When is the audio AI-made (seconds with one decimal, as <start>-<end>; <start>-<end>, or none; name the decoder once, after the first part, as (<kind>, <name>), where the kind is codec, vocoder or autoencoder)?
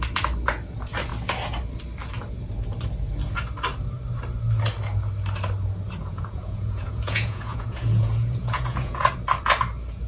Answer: 6.0-9.0 (vocoder, Vocos)